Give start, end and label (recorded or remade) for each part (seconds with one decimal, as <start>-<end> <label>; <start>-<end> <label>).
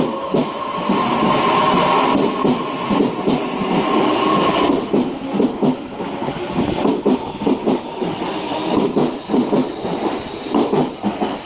0.0-0.4 recorded; 0.4-0.9 remade; 0.9-11.5 recorded